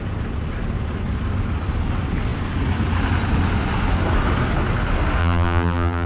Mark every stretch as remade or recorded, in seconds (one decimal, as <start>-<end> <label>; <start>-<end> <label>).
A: 0.0-5.2 recorded; 5.2-6.1 remade